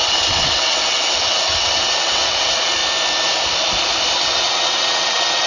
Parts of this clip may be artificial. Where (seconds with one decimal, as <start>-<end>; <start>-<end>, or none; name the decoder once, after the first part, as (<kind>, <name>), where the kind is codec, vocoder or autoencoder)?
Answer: 0.0-2.8 (vocoder, WaveNeXt); 4.2-5.5